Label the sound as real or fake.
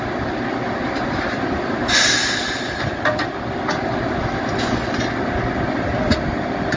real